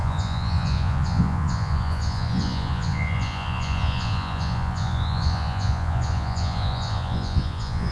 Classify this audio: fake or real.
fake